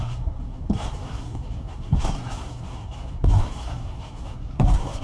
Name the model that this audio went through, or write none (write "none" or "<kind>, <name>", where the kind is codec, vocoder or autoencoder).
codec, SNAC